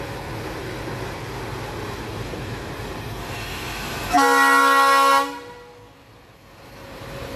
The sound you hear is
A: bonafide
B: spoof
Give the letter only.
A